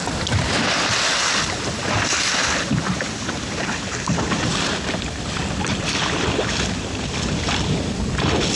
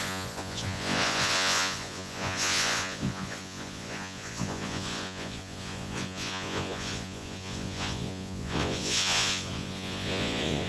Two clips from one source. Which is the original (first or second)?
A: first